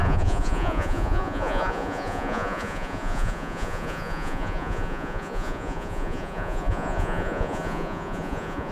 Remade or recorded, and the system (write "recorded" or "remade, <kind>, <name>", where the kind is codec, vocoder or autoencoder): remade, vocoder, Vocos